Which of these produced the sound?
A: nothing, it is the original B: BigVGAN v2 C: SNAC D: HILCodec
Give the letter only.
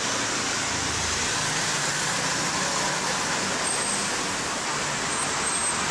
A